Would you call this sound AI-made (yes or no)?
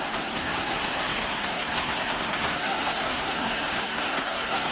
yes